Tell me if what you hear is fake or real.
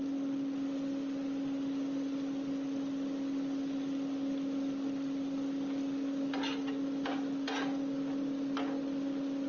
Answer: real